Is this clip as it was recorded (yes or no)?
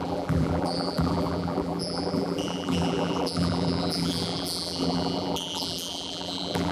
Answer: no